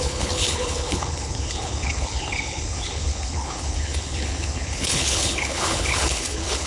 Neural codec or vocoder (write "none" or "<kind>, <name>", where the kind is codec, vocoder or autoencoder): codec, HILCodec